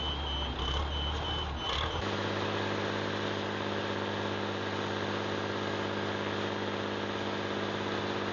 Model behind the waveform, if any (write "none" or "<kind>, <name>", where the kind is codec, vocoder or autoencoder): none